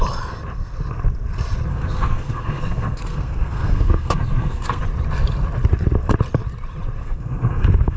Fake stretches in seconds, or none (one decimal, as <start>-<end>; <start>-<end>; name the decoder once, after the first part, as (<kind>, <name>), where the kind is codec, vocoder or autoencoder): 1.7-4.8 (codec, SNAC); 7.0-8.0